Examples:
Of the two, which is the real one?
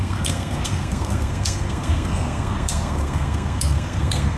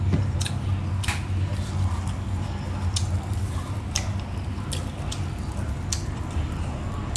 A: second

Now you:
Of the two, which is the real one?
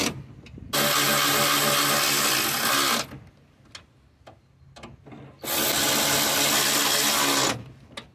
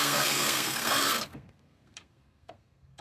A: first